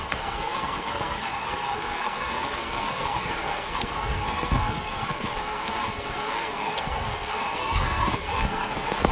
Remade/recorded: remade